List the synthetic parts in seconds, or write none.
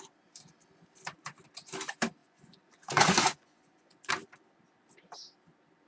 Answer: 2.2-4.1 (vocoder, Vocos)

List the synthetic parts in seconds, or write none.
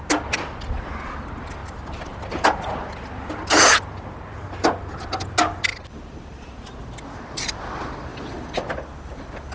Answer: none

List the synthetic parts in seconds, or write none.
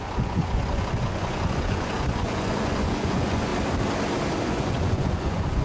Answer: 0.0-3.5 (vocoder, Vocos); 4.4-5.6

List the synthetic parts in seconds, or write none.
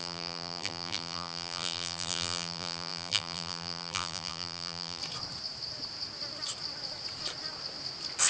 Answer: 0.0-5.0 (vocoder, BigVGAN v2)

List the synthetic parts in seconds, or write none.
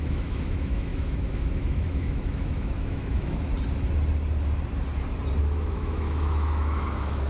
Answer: 0.0-3.5 (autoencoder, DAC-VAE); 5.4-7.3